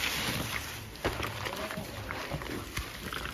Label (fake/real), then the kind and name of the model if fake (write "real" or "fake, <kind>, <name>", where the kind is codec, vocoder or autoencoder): fake, vocoder, BigVGAN v2